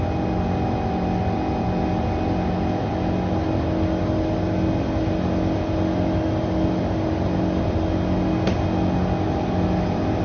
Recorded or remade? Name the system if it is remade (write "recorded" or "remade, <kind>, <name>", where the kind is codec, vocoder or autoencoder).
recorded